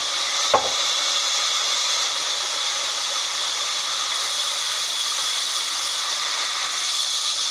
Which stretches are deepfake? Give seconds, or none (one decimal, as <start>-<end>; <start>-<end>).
0.0-7.5